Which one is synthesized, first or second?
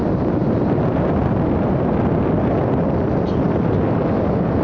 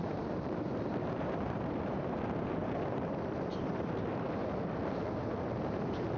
second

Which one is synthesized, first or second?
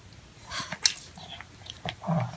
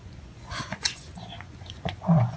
second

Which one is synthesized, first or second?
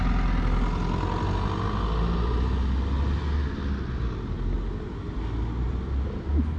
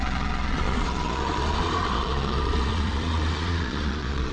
second